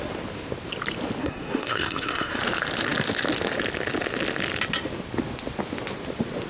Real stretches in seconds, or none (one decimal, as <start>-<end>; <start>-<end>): 0.0-1.2; 2.4-6.5